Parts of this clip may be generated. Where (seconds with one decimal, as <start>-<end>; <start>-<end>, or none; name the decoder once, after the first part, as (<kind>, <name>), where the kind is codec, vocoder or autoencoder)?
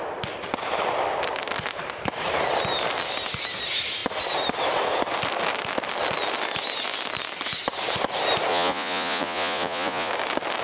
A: 8.5-10.1 (vocoder, Vocos)